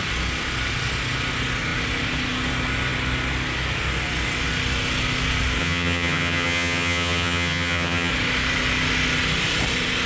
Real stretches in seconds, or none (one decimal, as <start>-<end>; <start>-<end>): 0.0-5.6; 8.1-10.1